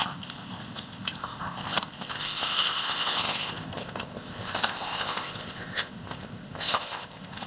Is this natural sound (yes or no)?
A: no